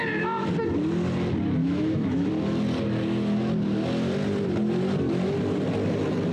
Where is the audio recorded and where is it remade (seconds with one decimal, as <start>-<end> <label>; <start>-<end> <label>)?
0.0-1.6 recorded; 1.6-2.3 remade; 2.3-6.3 recorded